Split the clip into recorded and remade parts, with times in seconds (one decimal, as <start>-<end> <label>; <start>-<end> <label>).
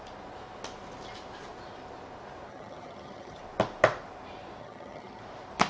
0.0-2.5 recorded; 2.5-3.4 remade; 3.4-4.6 recorded; 4.6-5.2 remade; 5.2-5.7 recorded